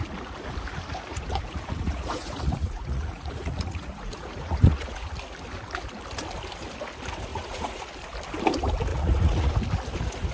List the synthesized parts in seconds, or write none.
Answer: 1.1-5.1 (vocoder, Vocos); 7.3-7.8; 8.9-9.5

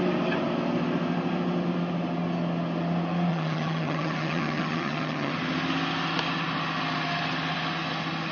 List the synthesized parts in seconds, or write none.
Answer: 3.3-5.3 (vocoder, HiFi-GAN)